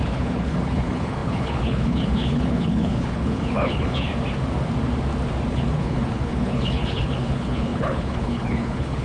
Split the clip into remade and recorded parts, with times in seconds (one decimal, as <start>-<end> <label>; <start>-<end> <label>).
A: 0.0-4.1 remade; 4.1-5.5 recorded; 5.5-9.0 remade